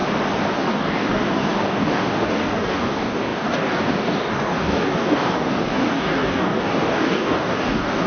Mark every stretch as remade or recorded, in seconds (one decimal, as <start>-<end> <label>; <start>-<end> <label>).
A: 0.0-0.5 recorded; 0.5-8.1 remade